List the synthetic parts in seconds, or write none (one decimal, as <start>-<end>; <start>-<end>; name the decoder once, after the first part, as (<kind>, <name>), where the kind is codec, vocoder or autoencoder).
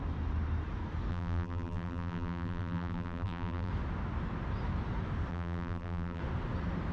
1.1-3.7 (vocoder, BigVGAN v2); 5.3-6.2